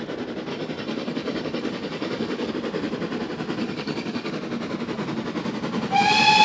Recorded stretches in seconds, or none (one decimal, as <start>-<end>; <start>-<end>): 0.0-0.5; 2.5-3.6; 4.3-6.4